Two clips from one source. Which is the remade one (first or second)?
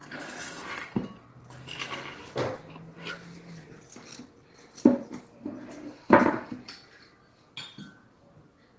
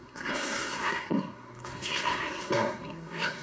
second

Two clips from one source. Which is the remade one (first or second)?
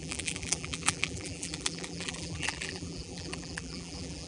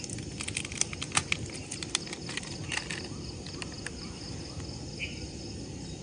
first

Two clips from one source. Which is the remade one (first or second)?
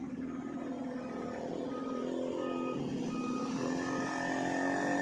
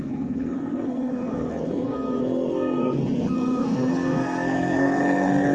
second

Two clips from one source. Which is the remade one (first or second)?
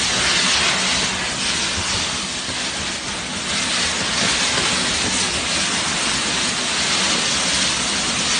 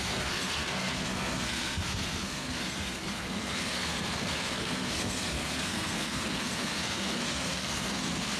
second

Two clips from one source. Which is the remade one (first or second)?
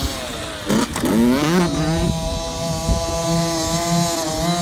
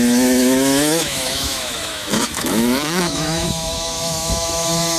second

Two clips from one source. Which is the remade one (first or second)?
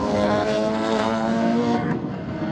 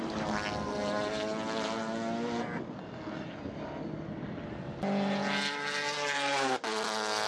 first